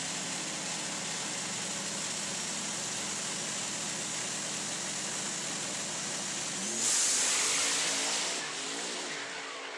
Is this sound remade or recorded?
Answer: recorded